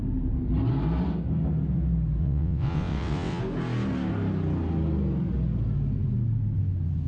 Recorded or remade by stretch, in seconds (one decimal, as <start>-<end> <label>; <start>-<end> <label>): 0.0-2.2 recorded; 2.2-3.4 remade; 3.4-7.1 recorded